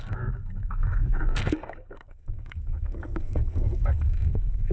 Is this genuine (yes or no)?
no